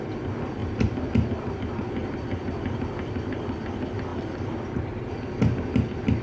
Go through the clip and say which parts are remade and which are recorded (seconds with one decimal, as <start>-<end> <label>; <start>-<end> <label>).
0.0-0.6 recorded; 0.6-1.5 remade; 1.5-2.0 recorded; 2.0-2.8 remade; 2.8-4.1 recorded; 4.1-5.0 remade; 5.0-6.2 recorded

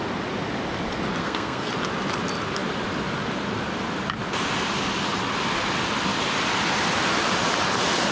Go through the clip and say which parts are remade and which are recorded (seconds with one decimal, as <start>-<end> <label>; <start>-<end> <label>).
0.0-1.2 recorded; 1.2-1.7 remade; 1.7-8.1 recorded

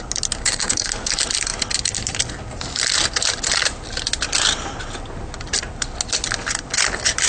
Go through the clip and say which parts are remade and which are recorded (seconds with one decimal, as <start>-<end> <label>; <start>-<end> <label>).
0.0-0.4 recorded; 0.4-1.1 remade; 1.1-7.3 recorded

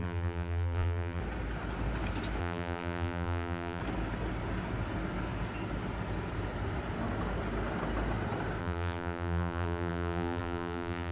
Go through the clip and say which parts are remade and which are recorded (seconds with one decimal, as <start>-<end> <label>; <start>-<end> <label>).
0.0-1.2 remade; 1.2-2.4 recorded; 2.4-3.8 remade; 3.8-8.6 recorded; 8.6-11.1 remade

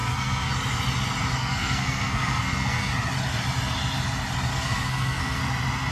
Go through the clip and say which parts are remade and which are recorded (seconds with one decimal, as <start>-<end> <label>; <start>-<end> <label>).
0.0-0.5 remade; 0.5-1.4 recorded; 1.4-2.9 remade; 2.9-4.5 recorded; 4.5-5.4 remade; 5.4-5.9 recorded

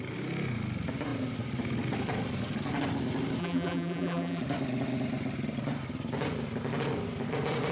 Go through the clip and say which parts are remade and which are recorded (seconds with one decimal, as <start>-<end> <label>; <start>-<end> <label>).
0.0-3.4 recorded; 3.4-4.4 remade; 4.4-7.7 recorded